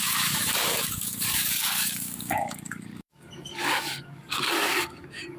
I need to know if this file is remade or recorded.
remade